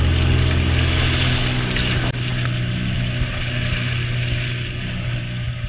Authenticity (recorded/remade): recorded